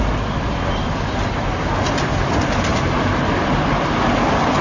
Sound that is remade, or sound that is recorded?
recorded